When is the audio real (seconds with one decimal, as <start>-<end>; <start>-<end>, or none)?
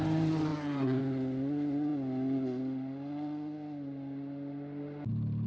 0.0-0.5; 1.0-5.5